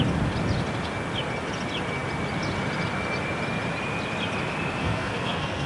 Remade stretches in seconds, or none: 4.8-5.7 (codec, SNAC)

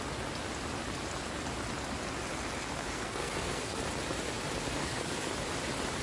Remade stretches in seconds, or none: 2.8-3.8 (codec, SNAC); 4.8-5.3

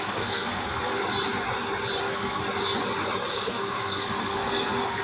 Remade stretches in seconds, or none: 0.0-1.0 (codec, SNAC); 2.0-2.4; 3.3-5.0

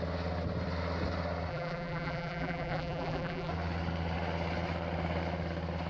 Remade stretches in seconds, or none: 1.5-3.5 (vocoder, BigVGAN v2)

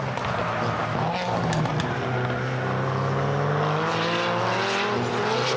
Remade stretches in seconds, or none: none